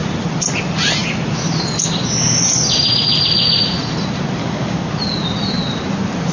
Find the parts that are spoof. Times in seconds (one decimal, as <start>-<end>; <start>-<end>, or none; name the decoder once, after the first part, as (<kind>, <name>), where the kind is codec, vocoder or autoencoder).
4.4-4.9 (codec, DAC)